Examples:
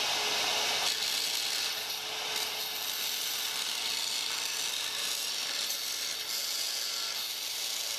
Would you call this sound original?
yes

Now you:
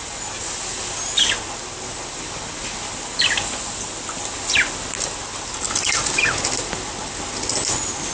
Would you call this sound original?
yes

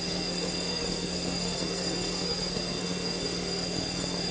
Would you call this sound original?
no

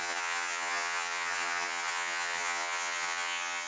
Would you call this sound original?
no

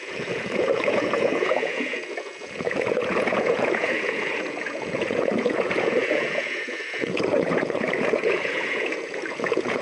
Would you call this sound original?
no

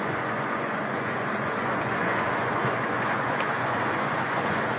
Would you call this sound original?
no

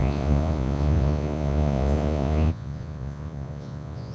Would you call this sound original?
no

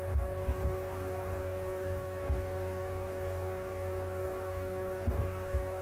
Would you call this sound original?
no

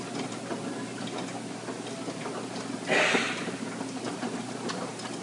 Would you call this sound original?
yes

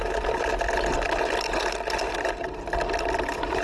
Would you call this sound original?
yes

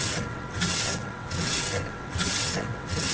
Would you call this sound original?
no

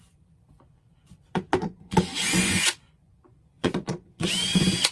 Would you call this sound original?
no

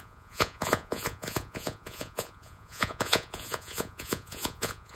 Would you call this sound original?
no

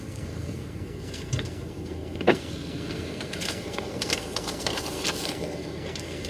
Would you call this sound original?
no